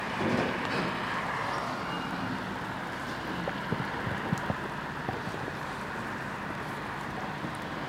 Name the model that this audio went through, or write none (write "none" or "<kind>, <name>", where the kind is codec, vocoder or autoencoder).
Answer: none